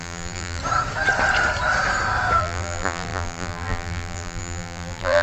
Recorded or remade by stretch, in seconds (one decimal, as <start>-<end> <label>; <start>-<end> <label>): 0.0-0.6 remade; 0.6-2.4 recorded; 2.4-5.2 remade